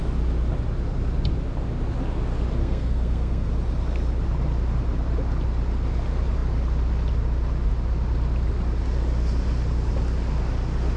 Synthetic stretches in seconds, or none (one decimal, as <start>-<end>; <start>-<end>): 2.6-3.5